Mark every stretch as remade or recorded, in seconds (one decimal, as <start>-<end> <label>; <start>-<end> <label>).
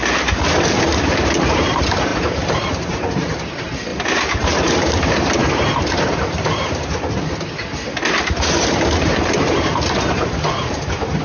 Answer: 0.0-5.4 remade; 5.4-8.2 recorded; 8.2-11.2 remade